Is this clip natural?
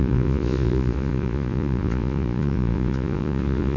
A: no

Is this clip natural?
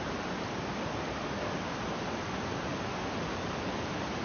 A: yes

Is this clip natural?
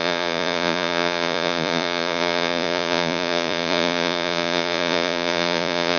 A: no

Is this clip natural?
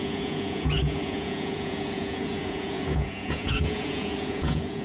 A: no